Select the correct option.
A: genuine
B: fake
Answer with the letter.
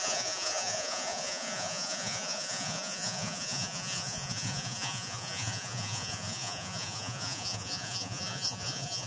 B